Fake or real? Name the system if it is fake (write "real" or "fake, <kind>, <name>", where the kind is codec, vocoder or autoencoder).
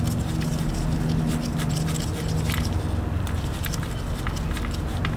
real